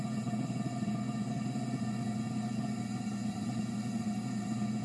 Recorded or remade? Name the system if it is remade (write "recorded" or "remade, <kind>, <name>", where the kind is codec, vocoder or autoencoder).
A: recorded